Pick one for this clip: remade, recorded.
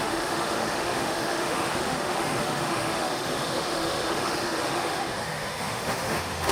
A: remade